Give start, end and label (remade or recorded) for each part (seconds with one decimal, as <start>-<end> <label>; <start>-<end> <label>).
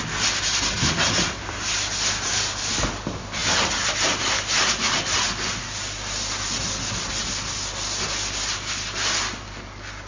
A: 0.0-10.1 recorded